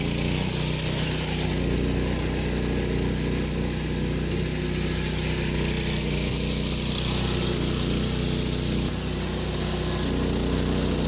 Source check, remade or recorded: recorded